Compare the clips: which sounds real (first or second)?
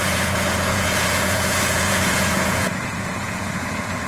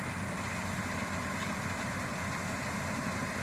second